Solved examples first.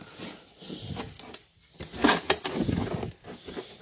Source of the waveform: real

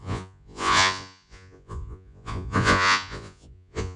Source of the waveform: fake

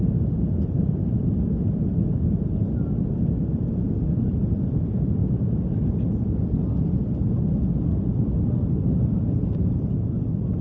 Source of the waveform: real